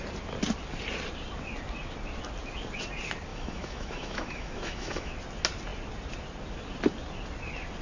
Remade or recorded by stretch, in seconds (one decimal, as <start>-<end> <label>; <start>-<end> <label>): 0.0-3.3 recorded; 3.3-5.1 remade; 5.1-7.8 recorded